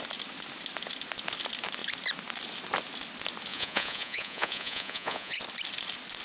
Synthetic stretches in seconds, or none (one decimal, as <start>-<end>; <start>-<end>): 3.5-5.4

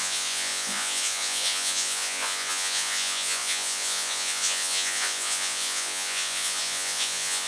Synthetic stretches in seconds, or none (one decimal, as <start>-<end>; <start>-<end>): 0.0-7.5

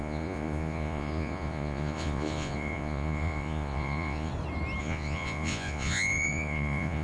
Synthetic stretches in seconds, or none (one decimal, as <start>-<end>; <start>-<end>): 0.0-4.3; 4.8-7.0

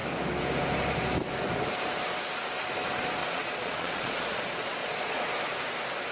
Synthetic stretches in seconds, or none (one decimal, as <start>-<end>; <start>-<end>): 3.2-5.3

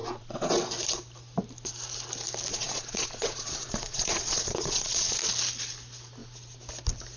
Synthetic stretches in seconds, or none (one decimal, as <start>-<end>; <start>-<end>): 0.0-0.5; 2.5-5.2

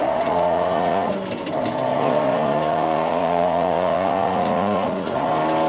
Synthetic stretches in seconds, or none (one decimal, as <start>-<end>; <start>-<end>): 0.0-1.1; 1.9-5.3